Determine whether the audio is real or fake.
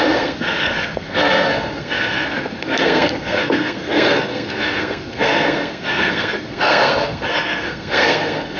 fake